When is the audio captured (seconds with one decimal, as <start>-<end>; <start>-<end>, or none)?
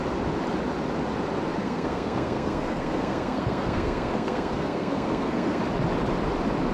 0.0-1.6; 5.6-6.7